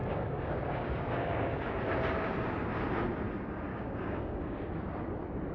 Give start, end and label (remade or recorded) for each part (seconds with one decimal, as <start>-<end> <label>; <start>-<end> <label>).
0.0-1.8 remade; 1.8-3.7 recorded; 3.7-4.7 remade; 4.7-5.5 recorded